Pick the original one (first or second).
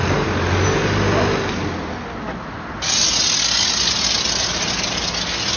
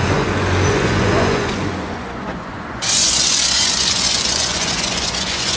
first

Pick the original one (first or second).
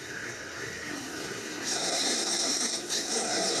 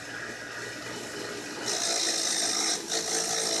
second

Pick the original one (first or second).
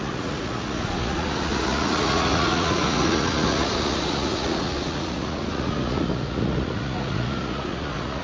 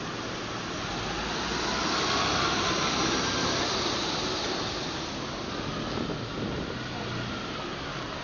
second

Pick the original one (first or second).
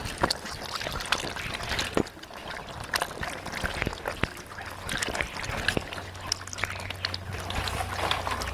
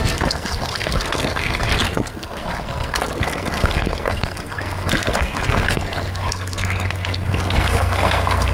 first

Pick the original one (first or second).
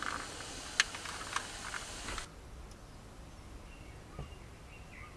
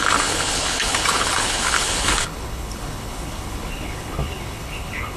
first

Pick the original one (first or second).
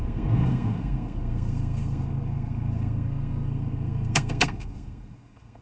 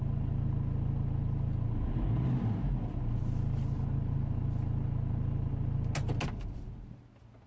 second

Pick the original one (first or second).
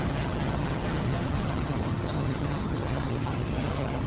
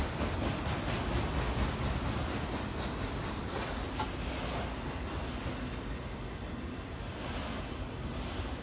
second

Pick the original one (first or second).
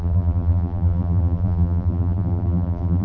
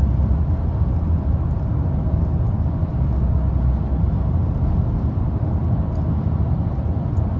second